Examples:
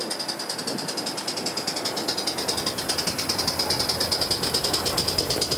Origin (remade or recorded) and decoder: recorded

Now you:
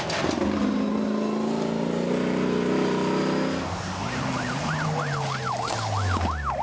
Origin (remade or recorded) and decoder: recorded